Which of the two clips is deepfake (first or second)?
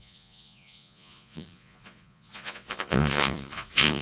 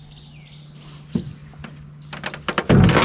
first